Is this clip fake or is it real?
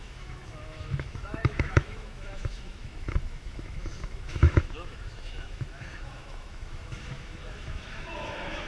fake